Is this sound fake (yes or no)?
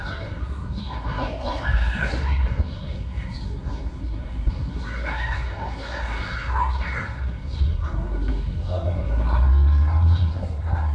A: yes